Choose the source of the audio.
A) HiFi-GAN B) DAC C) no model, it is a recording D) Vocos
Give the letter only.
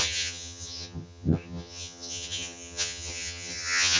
A